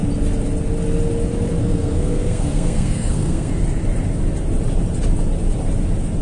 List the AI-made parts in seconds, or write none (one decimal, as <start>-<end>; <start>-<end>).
1.6-3.5